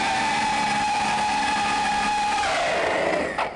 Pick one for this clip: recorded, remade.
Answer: recorded